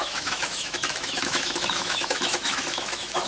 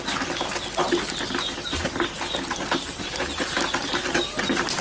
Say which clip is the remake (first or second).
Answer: first